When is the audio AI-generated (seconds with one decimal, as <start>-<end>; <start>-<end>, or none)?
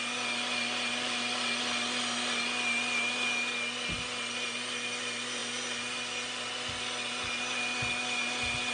none